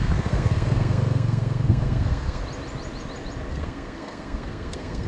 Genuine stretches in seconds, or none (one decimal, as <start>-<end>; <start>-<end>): 2.4-3.5